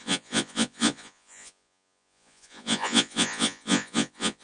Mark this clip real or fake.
fake